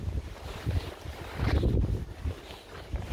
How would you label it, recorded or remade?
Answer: recorded